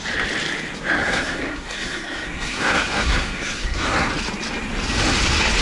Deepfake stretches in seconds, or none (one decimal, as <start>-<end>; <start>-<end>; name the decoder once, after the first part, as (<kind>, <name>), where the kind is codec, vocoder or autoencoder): 1.0-4.1 (codec, SNAC)